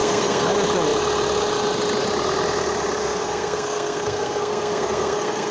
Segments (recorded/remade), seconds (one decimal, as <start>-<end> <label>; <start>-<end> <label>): 0.0-0.5 remade; 0.5-3.0 recorded; 3.0-5.5 remade